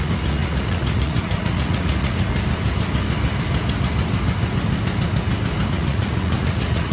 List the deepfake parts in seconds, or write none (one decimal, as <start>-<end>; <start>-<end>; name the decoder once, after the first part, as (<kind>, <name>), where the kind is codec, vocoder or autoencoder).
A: 0.0-2.3 (vocoder, Vocos); 5.7-6.9